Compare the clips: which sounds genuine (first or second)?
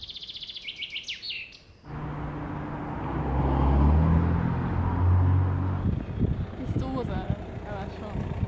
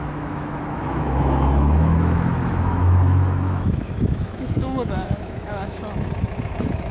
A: first